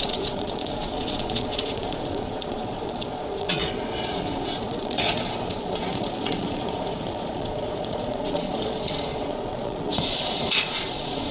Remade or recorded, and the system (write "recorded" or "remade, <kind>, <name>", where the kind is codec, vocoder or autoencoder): remade, vocoder, Vocos